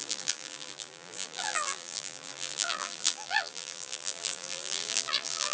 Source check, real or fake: fake